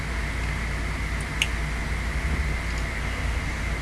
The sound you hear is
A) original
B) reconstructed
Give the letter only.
A